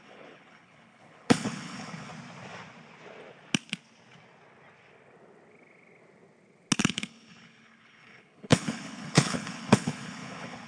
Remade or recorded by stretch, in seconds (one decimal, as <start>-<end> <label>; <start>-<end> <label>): 0.0-2.1 remade; 2.1-6.8 recorded; 6.8-10.7 remade